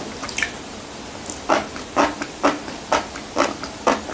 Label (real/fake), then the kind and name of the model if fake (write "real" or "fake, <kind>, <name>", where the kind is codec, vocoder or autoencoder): real